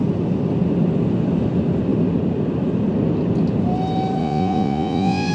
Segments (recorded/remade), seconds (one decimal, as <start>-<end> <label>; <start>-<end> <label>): 0.0-4.2 recorded; 4.2-5.3 remade

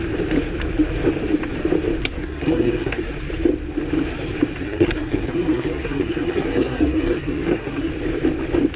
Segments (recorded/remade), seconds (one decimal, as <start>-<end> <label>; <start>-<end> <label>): 0.0-2.0 recorded; 2.0-3.1 remade; 3.1-4.6 recorded; 4.6-7.9 remade; 7.9-8.8 recorded

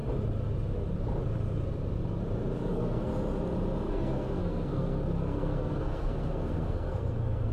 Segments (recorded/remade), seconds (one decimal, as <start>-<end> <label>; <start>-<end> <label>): 0.0-2.7 recorded; 2.7-3.1 remade; 3.1-3.9 recorded; 3.9-7.5 remade

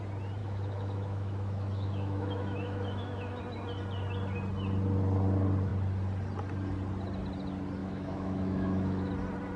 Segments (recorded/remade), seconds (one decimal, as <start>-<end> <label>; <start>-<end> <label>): 0.0-0.4 recorded; 0.4-3.4 remade; 3.4-7.8 recorded; 7.8-9.1 remade; 9.1-9.6 recorded

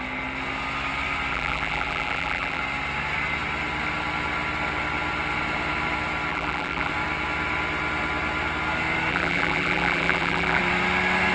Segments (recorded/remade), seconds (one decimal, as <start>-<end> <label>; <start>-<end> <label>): 0.0-1.3 recorded; 1.3-2.6 remade; 2.6-6.3 recorded; 6.3-6.9 remade; 6.9-9.1 recorded; 9.1-10.6 remade; 10.6-11.3 recorded